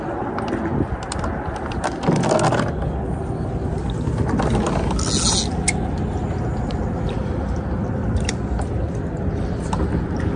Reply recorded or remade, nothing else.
recorded